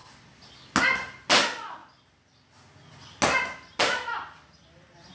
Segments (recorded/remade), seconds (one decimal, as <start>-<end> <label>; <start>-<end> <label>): 0.0-5.1 recorded